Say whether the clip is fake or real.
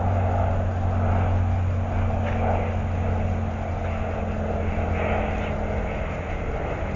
real